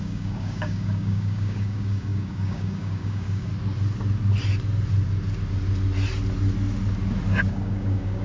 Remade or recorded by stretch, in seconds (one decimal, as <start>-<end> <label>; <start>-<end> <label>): 0.0-3.5 remade; 3.5-7.5 recorded; 7.5-8.2 remade

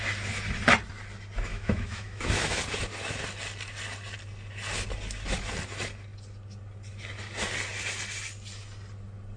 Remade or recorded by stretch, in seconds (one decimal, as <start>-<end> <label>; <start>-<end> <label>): 0.0-1.5 recorded; 1.5-2.6 remade; 2.6-9.4 recorded

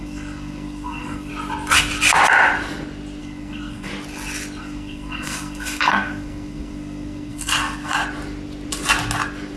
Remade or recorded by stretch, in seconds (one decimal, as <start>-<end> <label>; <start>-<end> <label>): 0.0-1.3 remade; 1.3-3.2 recorded; 3.2-3.9 remade; 3.9-4.6 recorded; 4.6-8.0 remade; 8.0-9.6 recorded

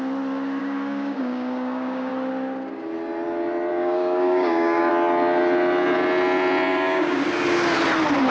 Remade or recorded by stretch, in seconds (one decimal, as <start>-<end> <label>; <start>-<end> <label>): 0.0-0.6 recorded; 0.6-2.1 remade; 2.1-3.7 recorded; 3.7-4.9 remade; 4.9-6.7 recorded; 6.7-7.2 remade; 7.2-8.3 recorded

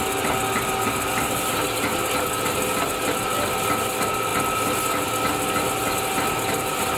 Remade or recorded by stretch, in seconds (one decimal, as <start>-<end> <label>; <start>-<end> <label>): 0.0-7.0 recorded

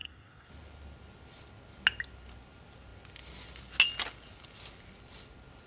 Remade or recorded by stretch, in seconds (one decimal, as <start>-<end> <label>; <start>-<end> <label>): 0.0-0.5 remade; 0.5-5.7 recorded